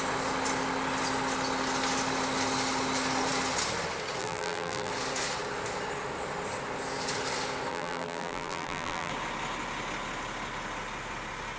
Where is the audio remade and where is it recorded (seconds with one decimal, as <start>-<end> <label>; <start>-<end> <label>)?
0.0-4.2 recorded; 4.2-4.9 remade; 4.9-7.7 recorded; 7.7-9.1 remade; 9.1-11.6 recorded

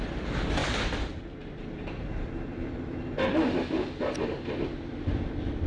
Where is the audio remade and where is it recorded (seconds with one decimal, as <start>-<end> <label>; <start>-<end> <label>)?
0.0-0.6 recorded; 0.6-1.2 remade; 1.2-5.7 recorded

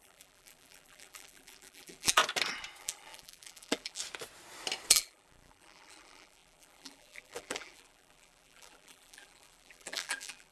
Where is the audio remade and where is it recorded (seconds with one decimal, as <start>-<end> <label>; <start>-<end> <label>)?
0.0-2.2 remade; 2.2-2.8 recorded; 2.8-4.0 remade; 4.0-4.9 recorded; 4.9-10.5 remade